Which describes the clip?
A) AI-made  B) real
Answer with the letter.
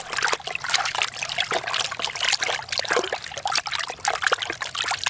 B